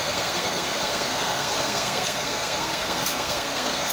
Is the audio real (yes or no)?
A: no